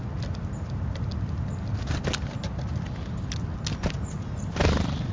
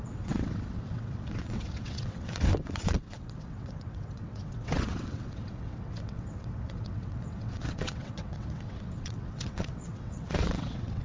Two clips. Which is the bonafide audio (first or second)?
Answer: first